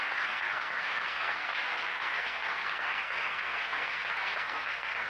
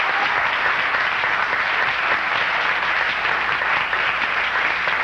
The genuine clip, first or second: second